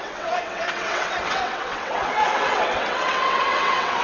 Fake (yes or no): yes